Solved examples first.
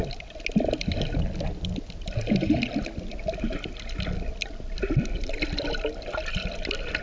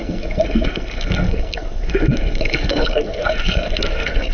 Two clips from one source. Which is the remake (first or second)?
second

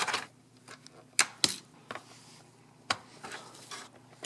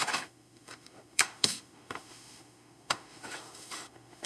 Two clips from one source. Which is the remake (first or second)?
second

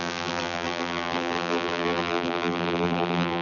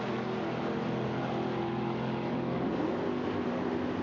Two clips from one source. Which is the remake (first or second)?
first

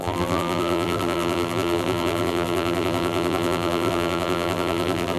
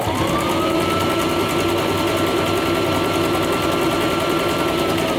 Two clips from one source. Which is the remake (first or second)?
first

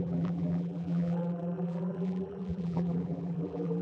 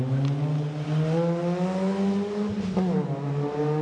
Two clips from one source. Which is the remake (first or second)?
first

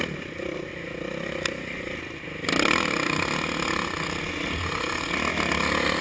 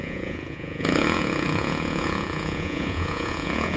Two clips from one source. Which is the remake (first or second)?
second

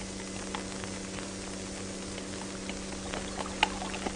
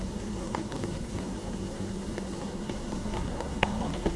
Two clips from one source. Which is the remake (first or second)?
second